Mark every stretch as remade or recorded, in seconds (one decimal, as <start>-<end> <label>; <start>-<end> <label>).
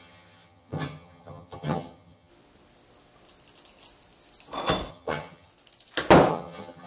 0.0-2.3 remade; 2.3-4.9 recorded; 4.9-5.5 remade; 5.5-6.3 recorded; 6.3-6.9 remade